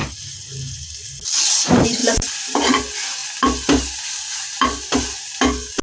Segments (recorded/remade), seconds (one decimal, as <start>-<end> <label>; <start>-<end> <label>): 0.0-2.0 recorded; 2.0-2.7 remade; 2.7-5.8 recorded